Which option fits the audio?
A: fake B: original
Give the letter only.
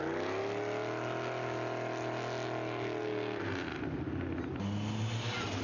B